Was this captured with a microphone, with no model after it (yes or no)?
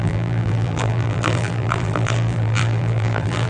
no